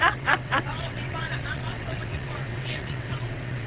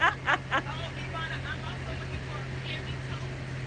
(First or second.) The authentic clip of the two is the second